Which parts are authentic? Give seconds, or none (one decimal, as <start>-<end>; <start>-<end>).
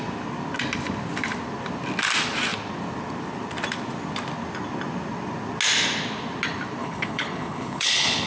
0.0-6.8